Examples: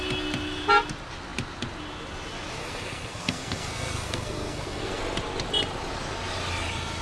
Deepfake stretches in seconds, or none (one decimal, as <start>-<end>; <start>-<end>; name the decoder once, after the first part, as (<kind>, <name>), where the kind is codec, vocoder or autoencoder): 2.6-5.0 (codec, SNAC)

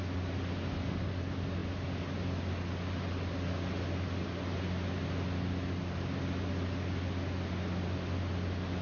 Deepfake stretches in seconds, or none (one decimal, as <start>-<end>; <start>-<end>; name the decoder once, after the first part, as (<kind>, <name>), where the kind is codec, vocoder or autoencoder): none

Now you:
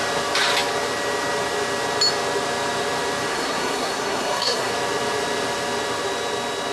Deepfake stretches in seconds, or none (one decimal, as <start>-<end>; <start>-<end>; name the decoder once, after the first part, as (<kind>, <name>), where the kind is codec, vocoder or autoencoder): 3.3-4.7 (codec, SNAC)

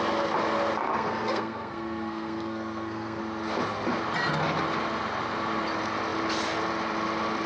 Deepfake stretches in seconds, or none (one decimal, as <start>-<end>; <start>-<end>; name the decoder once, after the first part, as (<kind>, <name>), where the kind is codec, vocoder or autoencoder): 0.9-3.2 (codec, SNAC)